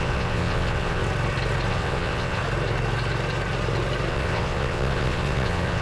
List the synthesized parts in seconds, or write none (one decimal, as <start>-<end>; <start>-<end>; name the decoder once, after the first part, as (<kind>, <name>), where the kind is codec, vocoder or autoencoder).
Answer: 0.0-1.0 (vocoder, WaveNeXt); 1.7-2.4; 4.1-5.8